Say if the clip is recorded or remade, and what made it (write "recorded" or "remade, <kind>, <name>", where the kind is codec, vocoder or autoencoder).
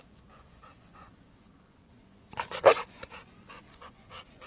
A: remade, vocoder, Vocos